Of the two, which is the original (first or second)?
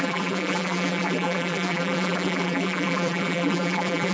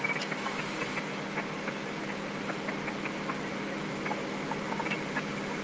second